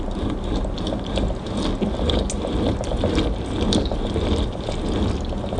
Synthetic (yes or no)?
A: no